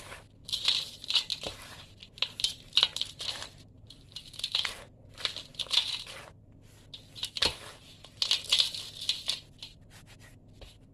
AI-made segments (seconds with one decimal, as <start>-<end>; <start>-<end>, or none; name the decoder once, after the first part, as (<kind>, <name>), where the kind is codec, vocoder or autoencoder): 0.4-4.7 (vocoder, BigVGAN v2)